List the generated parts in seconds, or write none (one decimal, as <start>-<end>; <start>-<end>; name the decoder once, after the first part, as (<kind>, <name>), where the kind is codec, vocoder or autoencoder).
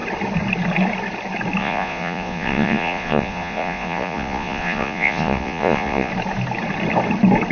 1.6-6.1 (vocoder, Vocos)